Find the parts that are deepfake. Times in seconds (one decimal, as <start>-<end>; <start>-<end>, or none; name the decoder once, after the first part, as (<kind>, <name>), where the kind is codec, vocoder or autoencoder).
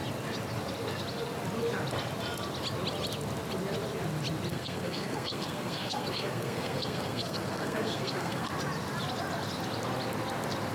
4.5-8.5 (codec, SNAC)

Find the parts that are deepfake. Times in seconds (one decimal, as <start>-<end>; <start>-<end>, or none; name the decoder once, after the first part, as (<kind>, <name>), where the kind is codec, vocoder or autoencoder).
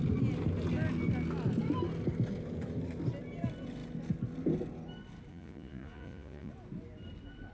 5.3-6.5 (vocoder, Vocos)